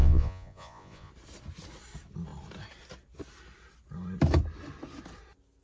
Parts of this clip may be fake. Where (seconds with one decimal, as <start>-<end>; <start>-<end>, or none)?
0.0-1.1